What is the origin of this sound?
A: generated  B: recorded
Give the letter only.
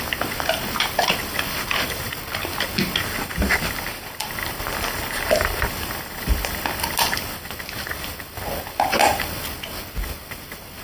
B